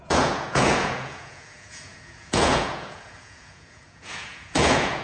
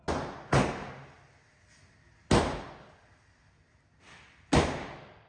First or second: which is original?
second